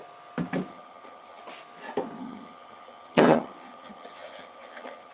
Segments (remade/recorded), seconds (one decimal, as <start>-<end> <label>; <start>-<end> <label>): 0.0-0.7 recorded; 0.7-1.4 remade; 1.4-2.2 recorded; 2.2-5.1 remade